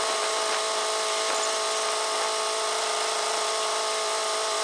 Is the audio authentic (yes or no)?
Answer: yes